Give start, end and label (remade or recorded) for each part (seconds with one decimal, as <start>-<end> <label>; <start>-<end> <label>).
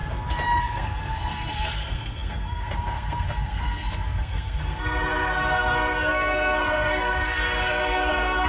0.0-0.6 recorded; 0.6-8.5 remade